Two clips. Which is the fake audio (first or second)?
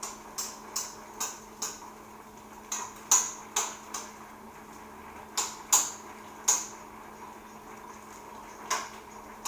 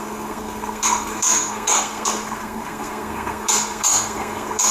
second